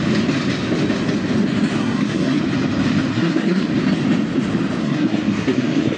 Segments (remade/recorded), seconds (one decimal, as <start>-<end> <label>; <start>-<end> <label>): 0.0-1.8 recorded; 1.8-2.4 remade; 2.4-3.1 recorded; 3.1-3.7 remade; 3.7-4.8 recorded; 4.8-6.0 remade